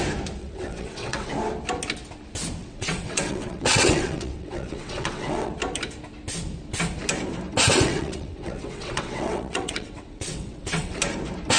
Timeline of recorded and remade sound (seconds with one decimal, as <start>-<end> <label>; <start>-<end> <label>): 0.0-0.4 recorded; 0.4-1.3 remade; 1.3-2.6 recorded; 2.6-5.5 remade; 5.5-7.7 recorded; 7.7-11.0 remade; 11.0-11.6 recorded